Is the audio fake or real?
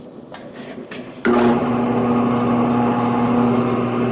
real